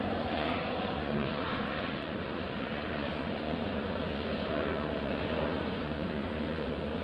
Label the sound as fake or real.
fake